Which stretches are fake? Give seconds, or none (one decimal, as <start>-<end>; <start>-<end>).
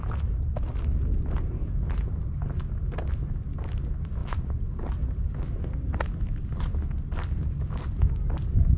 none